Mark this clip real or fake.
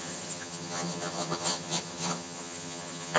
fake